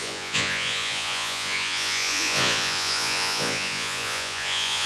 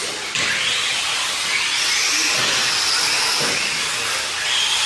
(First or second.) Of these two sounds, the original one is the second